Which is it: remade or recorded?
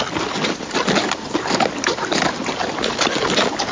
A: recorded